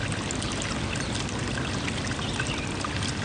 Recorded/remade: recorded